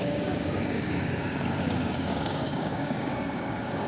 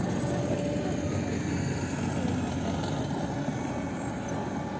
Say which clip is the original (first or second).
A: second